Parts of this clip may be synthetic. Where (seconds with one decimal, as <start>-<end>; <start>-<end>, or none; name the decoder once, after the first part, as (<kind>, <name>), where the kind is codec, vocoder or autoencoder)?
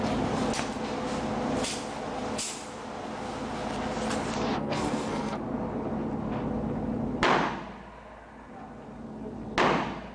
4.6-5.4 (codec, SNAC)